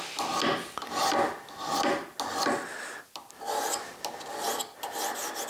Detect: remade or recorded recorded